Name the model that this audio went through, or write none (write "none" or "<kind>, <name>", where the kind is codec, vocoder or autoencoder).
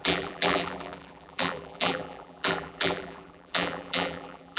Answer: vocoder, BigVGAN v2